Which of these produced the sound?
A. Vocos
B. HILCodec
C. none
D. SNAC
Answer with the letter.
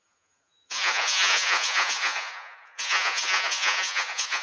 A